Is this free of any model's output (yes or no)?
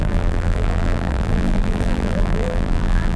no